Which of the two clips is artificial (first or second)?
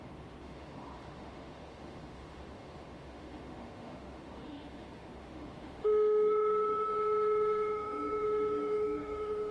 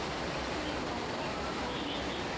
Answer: first